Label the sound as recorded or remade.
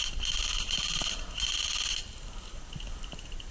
recorded